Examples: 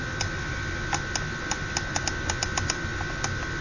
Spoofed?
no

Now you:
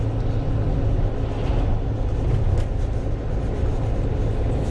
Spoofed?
no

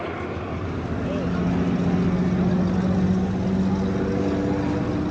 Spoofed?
no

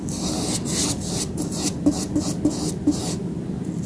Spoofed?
no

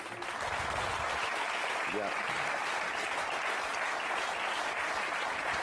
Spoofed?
no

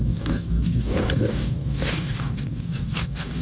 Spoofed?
yes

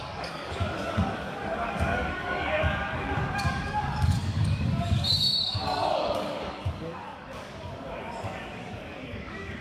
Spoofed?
yes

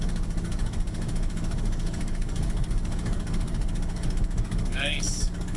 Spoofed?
yes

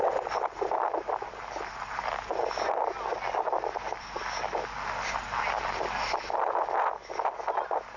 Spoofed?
no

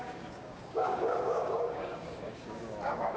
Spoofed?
yes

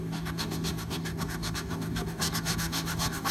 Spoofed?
yes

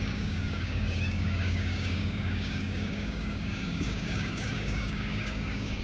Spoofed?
yes